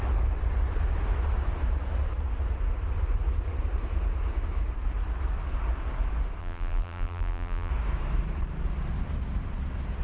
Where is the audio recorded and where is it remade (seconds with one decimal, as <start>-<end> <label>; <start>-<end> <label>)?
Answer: 0.0-6.4 recorded; 6.4-7.7 remade; 7.7-10.0 recorded